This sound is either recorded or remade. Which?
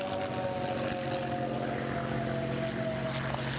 recorded